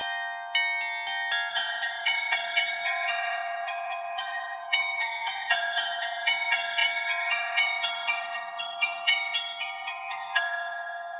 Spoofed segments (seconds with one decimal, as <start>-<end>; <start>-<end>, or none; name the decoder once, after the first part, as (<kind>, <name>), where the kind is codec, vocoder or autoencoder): 1.5-11.2 (vocoder, HiFi-GAN)